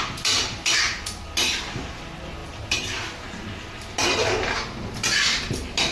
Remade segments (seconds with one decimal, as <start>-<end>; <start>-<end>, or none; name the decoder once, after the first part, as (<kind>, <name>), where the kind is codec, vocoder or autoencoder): none